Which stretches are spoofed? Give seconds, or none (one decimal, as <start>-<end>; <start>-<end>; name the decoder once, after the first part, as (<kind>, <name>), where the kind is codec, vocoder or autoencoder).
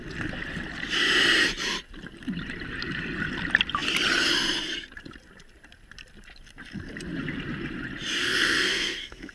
8.2-9.3 (codec, SNAC)